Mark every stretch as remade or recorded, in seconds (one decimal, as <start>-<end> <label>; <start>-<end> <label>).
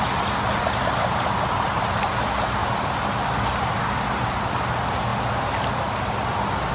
0.0-6.7 recorded